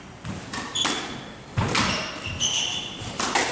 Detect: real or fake real